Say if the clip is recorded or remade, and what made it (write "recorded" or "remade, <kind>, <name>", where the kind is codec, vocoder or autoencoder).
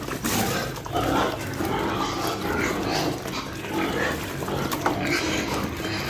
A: recorded